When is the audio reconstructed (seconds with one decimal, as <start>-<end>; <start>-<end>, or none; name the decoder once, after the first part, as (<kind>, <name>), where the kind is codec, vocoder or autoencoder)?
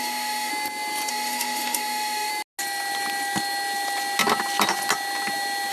0.0-0.5 (autoencoder, DAC-VAE); 1.1-2.3